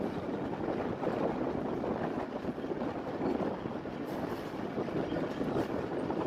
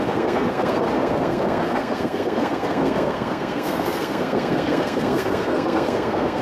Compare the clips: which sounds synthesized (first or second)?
second